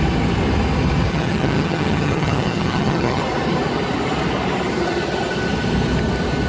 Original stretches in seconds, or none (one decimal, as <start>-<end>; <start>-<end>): 0.0-1.1; 3.2-6.5